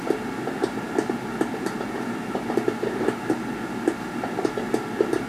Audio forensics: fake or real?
real